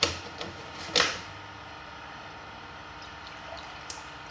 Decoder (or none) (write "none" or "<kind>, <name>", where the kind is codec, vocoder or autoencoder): vocoder, BigVGAN v2